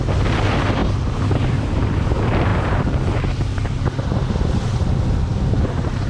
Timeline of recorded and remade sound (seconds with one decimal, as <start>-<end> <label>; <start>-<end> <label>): 0.0-6.1 recorded